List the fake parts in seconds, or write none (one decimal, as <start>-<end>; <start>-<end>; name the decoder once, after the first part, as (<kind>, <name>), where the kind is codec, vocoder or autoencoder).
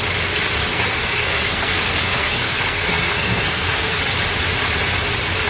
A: 0.7-4.0 (codec, SNAC)